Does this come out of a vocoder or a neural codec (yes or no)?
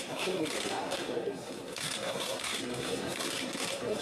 yes